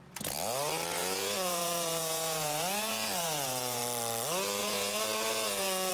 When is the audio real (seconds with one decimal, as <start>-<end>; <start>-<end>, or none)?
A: 0.0-1.0; 3.8-4.6